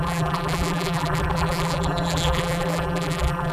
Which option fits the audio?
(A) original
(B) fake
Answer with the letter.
B